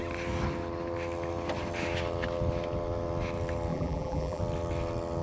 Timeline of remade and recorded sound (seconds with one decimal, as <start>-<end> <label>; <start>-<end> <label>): 0.0-3.7 recorded; 3.7-4.4 remade; 4.4-5.2 recorded